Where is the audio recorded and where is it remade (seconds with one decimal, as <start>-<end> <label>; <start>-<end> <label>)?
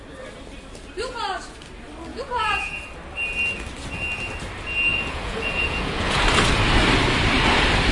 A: 0.0-2.1 recorded; 2.1-2.8 remade; 2.8-4.9 recorded; 4.9-6.2 remade; 6.2-7.9 recorded